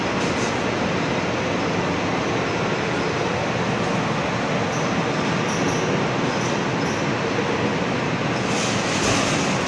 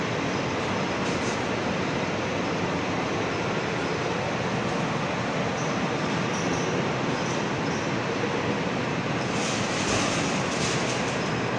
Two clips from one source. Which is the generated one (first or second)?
second